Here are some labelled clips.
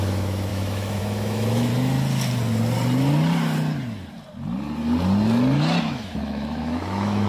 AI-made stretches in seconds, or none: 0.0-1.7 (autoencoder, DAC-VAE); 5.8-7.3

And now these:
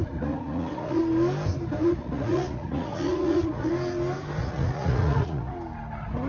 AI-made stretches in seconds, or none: 0.0-1.0 (vocoder, Vocos); 1.8-3.7; 4.4-5.5